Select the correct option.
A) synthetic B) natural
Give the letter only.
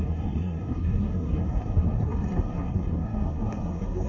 A